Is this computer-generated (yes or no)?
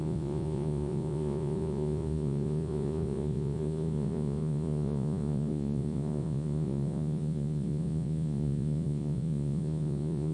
yes